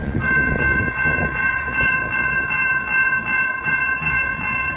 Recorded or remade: remade